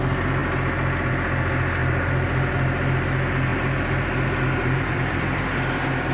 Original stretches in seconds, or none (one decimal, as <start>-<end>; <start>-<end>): 0.0-1.8; 2.5-3.5